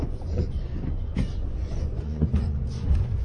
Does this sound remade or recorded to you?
remade